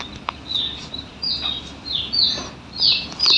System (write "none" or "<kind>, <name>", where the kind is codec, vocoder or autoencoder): none